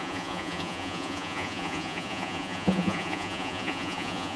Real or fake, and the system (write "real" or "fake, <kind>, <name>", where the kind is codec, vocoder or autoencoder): fake, vocoder, Vocos